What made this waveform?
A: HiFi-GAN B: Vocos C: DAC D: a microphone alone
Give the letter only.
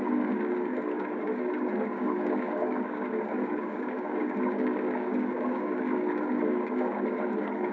C